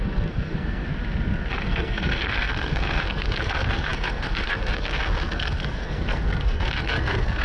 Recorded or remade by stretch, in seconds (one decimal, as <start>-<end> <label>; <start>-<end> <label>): 0.0-0.9 remade; 0.9-1.5 recorded; 1.5-7.4 remade